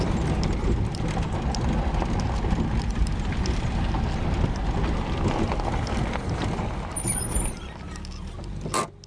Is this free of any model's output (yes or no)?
yes